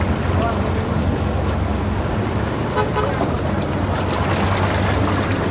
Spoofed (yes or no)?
no